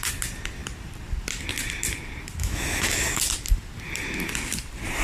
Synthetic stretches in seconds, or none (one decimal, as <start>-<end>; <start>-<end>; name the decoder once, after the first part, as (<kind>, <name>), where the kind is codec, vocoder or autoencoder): 2.4-3.2 (autoencoder, DAC-VAE)